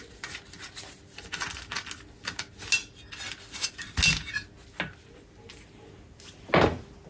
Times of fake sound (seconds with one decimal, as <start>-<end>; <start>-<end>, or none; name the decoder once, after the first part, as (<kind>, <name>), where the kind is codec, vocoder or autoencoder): none